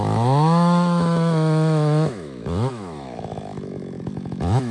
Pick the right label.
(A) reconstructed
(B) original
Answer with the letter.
A